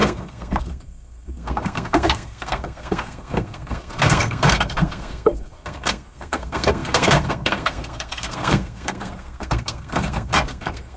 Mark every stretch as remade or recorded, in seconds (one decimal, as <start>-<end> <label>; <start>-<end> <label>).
0.0-11.0 remade